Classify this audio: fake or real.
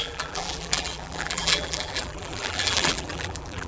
fake